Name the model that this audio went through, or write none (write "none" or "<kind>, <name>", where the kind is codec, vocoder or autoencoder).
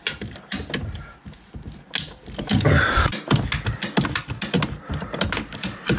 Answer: none